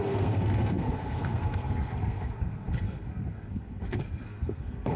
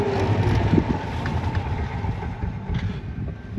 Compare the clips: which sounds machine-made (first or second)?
first